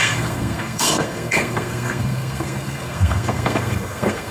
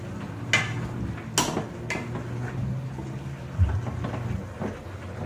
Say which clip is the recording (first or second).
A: second